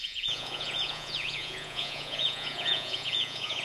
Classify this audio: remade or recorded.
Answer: remade